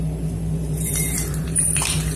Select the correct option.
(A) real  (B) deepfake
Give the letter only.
B